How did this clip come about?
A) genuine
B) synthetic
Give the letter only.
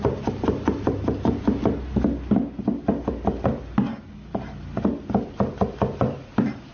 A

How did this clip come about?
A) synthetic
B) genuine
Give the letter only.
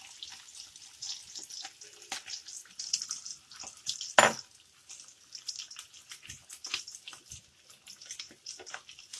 B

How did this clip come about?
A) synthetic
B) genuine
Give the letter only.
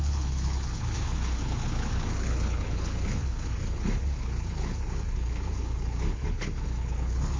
A